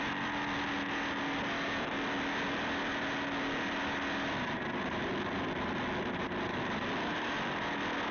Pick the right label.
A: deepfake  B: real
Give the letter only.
B